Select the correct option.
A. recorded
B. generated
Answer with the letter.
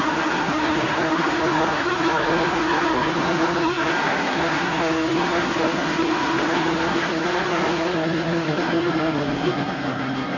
B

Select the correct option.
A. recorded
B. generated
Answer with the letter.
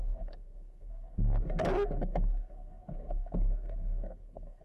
B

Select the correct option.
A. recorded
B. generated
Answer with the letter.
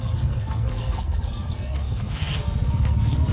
B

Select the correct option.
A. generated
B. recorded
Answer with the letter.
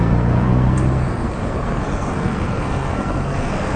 A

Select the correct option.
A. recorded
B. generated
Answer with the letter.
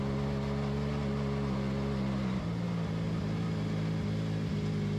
A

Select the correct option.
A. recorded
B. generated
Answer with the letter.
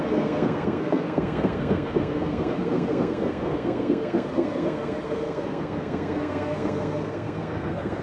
B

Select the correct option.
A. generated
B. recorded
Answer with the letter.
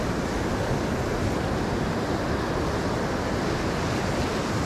B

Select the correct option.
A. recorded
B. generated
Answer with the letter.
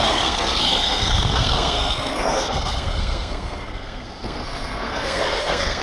B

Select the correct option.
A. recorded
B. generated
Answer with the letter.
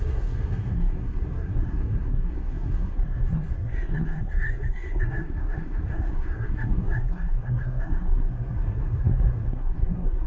B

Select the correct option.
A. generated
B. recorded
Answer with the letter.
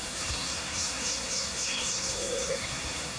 A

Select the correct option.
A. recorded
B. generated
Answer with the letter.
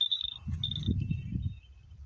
A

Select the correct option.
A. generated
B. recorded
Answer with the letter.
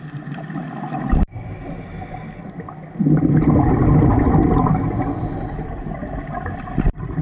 B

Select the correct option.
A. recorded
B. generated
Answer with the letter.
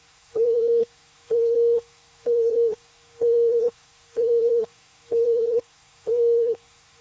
B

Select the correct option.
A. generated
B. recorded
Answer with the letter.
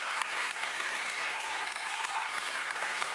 A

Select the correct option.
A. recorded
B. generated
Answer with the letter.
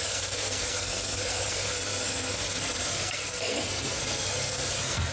B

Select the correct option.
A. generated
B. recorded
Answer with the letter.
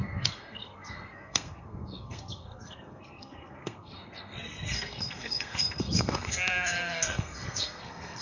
A